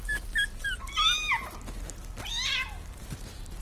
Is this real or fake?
real